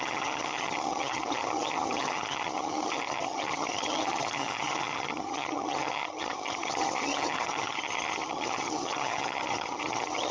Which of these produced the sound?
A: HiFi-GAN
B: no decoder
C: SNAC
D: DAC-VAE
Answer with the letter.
A